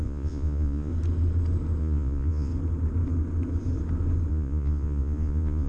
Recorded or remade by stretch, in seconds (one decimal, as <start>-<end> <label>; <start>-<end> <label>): 0.0-0.9 remade; 0.9-1.8 recorded; 1.8-2.5 remade; 2.5-4.3 recorded; 4.3-5.7 remade